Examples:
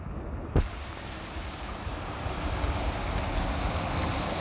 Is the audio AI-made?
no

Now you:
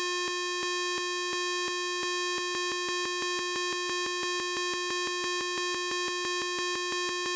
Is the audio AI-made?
no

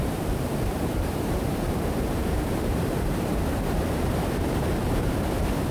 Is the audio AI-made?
yes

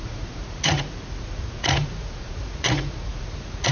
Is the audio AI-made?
yes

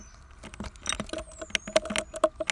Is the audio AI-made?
no